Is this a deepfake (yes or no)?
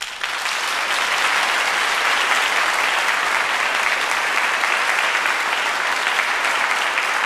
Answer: no